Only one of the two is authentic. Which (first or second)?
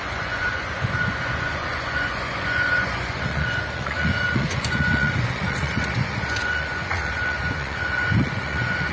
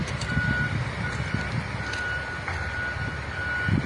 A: second